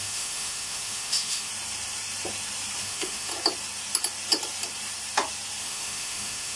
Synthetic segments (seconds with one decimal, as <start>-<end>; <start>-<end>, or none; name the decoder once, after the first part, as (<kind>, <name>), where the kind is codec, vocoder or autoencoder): 0.0-1.5 (autoencoder, DAC-VAE); 2.8-3.3; 5.6-6.6